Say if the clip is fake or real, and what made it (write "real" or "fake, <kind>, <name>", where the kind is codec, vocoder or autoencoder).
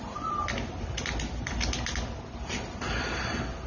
real